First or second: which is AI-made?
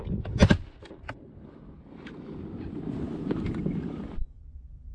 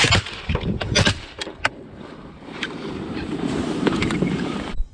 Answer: second